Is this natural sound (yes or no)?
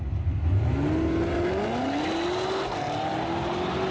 yes